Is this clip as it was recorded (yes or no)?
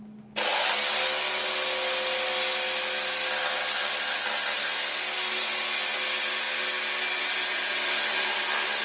yes